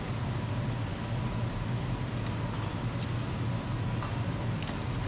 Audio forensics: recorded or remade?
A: recorded